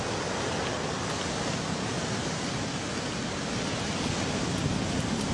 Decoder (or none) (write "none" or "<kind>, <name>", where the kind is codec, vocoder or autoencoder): none